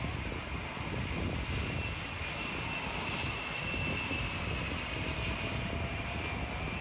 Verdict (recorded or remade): recorded